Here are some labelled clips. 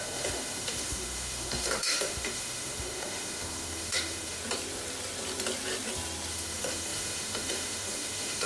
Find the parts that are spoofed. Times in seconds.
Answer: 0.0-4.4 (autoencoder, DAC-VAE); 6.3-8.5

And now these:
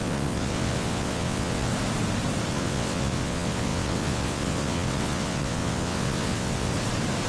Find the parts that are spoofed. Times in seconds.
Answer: 0.0-1.7 (vocoder, WaveNeXt); 2.5-6.7

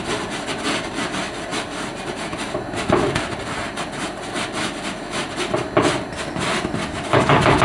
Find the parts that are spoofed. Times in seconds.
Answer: 6.8-7.6 (codec, DAC)

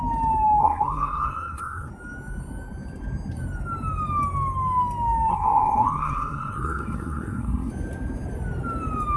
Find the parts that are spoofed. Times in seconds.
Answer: 0.6-1.9 (codec, SNAC); 5.3-7.7

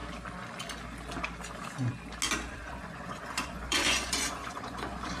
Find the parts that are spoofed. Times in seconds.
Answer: 2.5-5.2 (vocoder, Vocos)

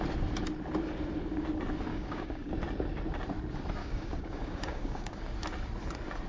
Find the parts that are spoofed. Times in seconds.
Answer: 1.9-2.5 (codec, DAC); 3.8-5.2

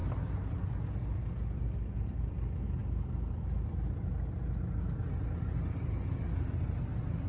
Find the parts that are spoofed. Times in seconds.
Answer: 0.0-0.6 (vocoder, BigVGAN v2)

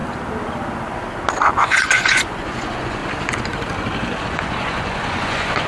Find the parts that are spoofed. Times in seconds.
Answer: 1.6-3.0 (vocoder, Vocos); 4.2-5.7